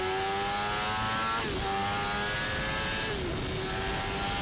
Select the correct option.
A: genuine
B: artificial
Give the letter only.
A